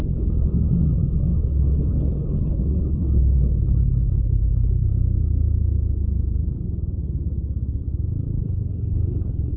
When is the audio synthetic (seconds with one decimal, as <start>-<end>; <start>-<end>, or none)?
0.0-4.9; 8.4-9.6

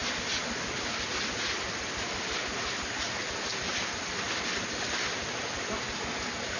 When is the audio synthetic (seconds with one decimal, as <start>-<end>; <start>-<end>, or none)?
none

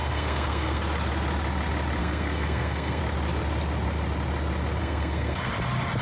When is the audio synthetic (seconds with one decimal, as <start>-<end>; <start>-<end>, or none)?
0.0-0.8; 2.0-3.0; 4.8-5.5

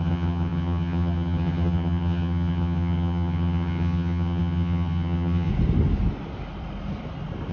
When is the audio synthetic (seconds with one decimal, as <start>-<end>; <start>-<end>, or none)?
0.0-5.5

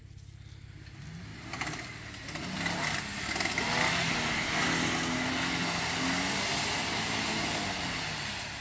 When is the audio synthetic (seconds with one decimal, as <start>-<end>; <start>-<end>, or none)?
none

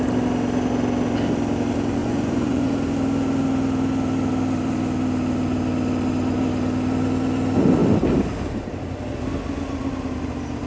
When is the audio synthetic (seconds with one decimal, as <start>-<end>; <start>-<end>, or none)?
2.0-2.7